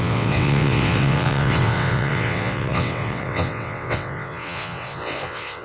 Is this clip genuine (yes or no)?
no